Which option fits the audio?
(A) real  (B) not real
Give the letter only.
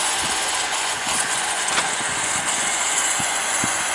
B